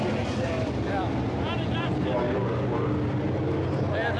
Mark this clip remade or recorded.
recorded